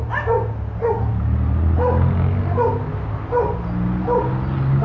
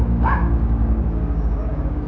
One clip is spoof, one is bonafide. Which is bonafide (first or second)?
first